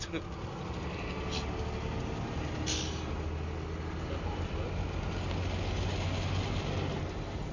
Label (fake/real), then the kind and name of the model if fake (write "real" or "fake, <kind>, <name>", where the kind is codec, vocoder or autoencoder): real